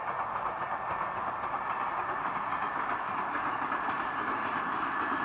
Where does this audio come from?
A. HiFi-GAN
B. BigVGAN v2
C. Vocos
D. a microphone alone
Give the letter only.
D